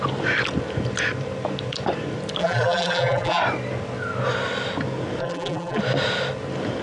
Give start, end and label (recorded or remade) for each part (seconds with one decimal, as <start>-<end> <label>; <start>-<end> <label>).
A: 0.0-2.4 recorded; 2.4-3.4 remade; 3.4-5.2 recorded; 5.2-5.8 remade; 5.8-6.8 recorded

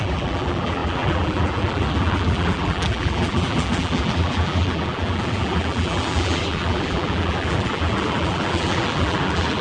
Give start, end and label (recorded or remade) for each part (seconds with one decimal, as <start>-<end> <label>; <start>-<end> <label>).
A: 0.0-9.6 remade

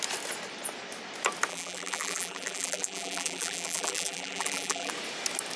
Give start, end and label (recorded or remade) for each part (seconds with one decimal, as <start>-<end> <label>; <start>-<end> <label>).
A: 0.0-1.5 recorded; 1.5-4.9 remade; 4.9-5.6 recorded

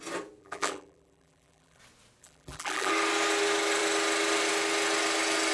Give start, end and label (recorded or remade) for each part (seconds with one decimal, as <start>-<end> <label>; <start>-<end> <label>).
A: 0.0-0.4 recorded; 0.4-1.8 remade; 1.8-2.2 recorded; 2.2-2.9 remade; 2.9-5.5 recorded

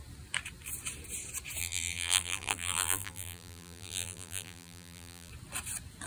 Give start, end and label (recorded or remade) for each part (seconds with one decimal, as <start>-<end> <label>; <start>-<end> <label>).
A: 0.0-1.6 recorded; 1.6-5.3 remade; 5.3-6.1 recorded

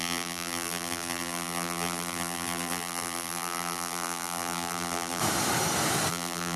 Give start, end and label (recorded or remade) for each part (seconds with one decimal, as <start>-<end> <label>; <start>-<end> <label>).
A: 0.0-5.2 remade; 5.2-6.1 recorded; 6.1-6.6 remade

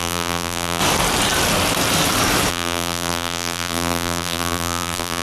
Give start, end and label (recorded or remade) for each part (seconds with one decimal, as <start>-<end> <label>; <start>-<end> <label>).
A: 0.0-0.8 remade; 0.8-2.5 recorded; 2.5-5.2 remade

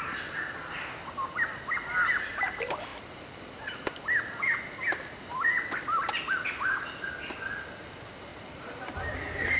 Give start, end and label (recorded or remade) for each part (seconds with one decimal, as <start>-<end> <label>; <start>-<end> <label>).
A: 0.0-2.9 recorded; 2.9-3.6 remade; 3.6-8.3 recorded; 8.3-9.1 remade; 9.1-9.6 recorded